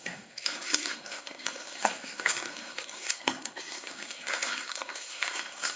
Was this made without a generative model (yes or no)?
no